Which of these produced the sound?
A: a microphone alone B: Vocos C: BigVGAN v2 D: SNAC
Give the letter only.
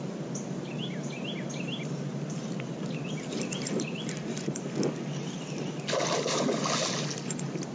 A